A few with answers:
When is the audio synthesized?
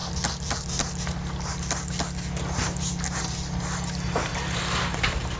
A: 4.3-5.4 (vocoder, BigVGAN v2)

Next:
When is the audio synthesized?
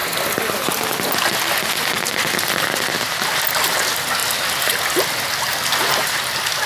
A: none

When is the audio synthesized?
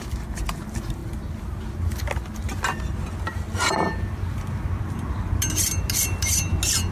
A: none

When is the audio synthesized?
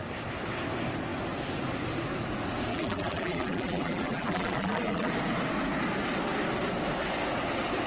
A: 2.7-5.1 (vocoder, BigVGAN v2)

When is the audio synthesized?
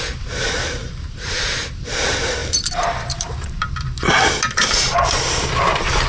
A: 0.0-6.1 (vocoder, BigVGAN v2)